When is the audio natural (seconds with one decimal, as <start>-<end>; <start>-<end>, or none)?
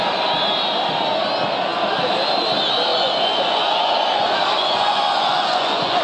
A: 0.0-2.9